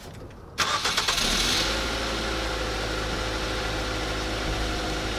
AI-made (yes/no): no